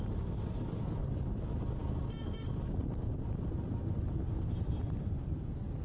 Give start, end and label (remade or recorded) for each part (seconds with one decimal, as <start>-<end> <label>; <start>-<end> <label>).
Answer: 0.0-5.8 recorded